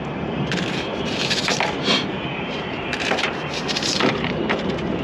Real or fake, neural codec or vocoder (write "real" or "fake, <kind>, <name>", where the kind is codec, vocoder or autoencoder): fake, vocoder, BigVGAN v2